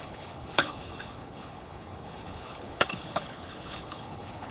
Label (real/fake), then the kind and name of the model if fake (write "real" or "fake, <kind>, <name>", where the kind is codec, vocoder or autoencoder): fake, codec, HILCodec